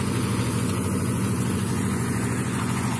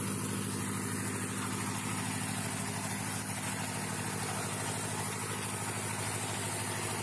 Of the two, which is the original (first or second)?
second